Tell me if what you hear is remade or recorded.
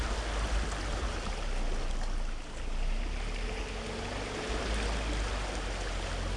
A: recorded